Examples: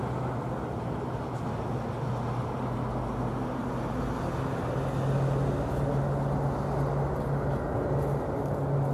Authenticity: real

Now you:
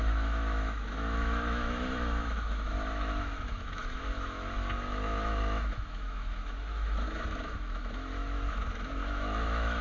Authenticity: fake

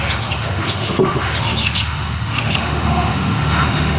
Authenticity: fake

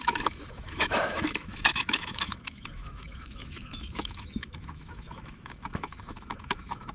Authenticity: fake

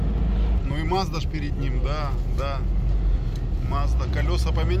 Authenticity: real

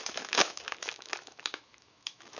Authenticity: fake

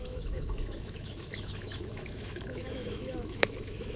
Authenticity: fake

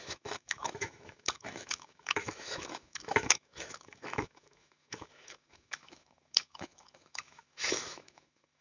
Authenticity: fake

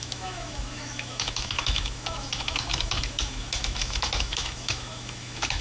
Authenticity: fake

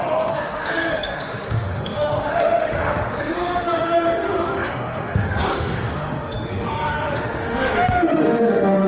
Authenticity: fake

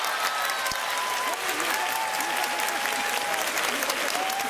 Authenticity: real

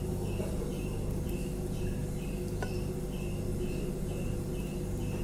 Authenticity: real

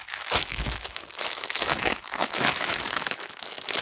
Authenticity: fake